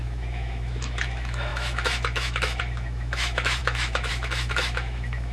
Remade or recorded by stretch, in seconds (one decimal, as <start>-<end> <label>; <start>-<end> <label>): 0.0-5.3 remade